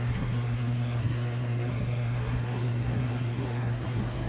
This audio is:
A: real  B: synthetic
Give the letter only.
B